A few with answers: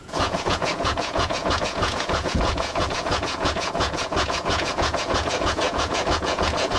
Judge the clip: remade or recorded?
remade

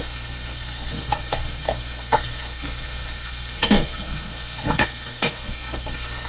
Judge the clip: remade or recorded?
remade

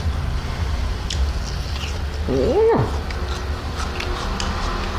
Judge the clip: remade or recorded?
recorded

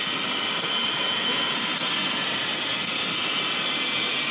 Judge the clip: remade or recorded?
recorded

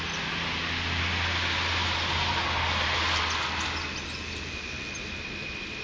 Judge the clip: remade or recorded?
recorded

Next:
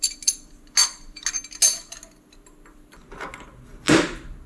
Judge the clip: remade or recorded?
recorded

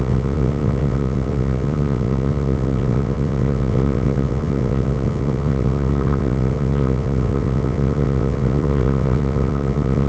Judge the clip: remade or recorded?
remade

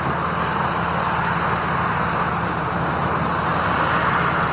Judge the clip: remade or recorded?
recorded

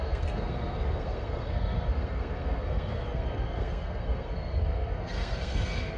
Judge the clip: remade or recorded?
remade